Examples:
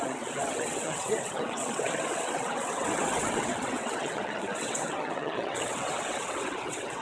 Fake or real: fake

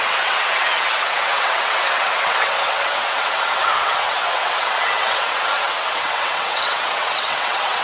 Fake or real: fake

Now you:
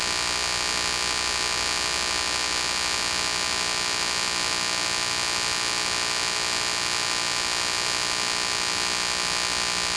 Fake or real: real